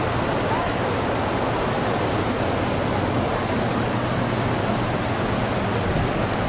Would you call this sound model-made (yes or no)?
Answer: no